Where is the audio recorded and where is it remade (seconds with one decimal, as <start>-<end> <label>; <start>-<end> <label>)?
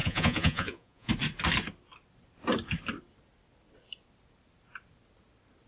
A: 0.0-1.1 remade; 1.1-5.7 recorded